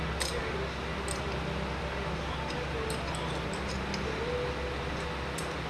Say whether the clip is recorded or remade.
recorded